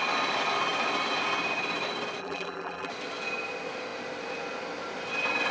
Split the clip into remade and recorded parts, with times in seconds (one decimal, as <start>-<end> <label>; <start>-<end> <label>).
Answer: 0.0-2.2 recorded; 2.2-2.9 remade; 2.9-5.5 recorded